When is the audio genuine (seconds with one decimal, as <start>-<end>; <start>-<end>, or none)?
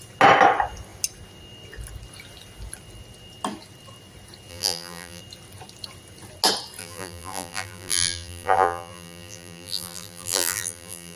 0.0-4.5; 5.2-6.8